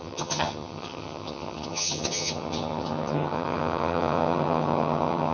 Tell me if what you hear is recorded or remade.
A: remade